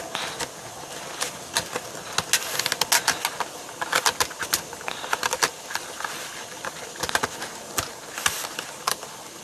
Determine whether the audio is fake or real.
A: real